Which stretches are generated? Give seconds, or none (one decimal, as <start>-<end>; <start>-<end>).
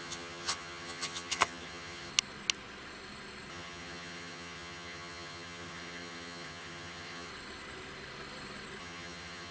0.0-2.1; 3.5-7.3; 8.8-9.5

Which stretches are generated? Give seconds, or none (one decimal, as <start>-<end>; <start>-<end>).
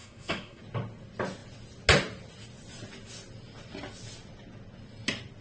0.0-0.6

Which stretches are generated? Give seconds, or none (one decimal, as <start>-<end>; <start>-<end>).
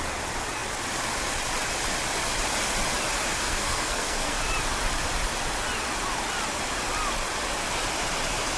3.4-4.4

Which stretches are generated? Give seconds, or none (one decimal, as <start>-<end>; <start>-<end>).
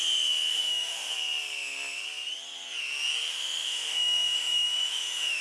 0.5-1.1; 3.3-5.4